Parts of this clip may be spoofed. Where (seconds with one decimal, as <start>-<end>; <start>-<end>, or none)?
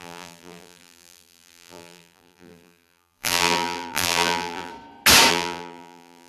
0.0-4.7; 5.3-6.3